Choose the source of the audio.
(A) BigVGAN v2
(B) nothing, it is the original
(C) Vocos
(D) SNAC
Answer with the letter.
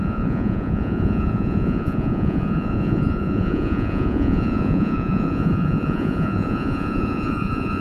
C